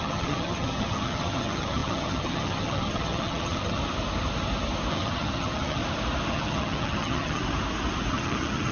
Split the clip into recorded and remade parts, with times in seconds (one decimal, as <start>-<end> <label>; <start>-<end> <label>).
0.0-3.8 remade; 3.8-4.9 recorded; 4.9-5.8 remade; 5.8-6.3 recorded; 6.3-7.4 remade; 7.4-8.1 recorded; 8.1-8.7 remade